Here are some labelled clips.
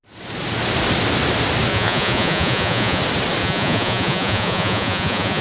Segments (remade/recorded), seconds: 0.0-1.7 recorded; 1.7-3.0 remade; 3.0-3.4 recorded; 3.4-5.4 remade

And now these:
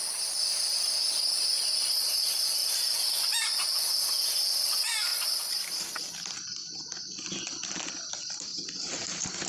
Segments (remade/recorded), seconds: 0.0-2.6 recorded; 2.6-3.9 remade; 3.9-8.5 recorded; 8.5-9.5 remade

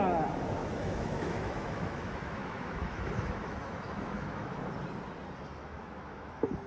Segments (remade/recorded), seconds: 0.0-0.6 recorded; 0.6-4.6 remade; 4.6-5.6 recorded; 5.6-6.7 remade

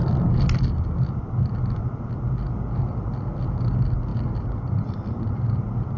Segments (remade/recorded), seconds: 0.0-4.1 recorded; 4.1-5.6 remade; 5.6-6.0 recorded

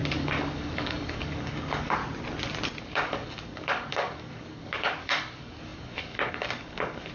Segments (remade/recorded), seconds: 0.0-2.0 remade; 2.0-2.8 recorded; 2.8-7.1 remade